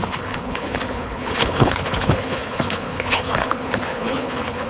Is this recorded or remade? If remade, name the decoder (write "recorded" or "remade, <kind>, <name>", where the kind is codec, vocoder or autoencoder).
remade, codec, HILCodec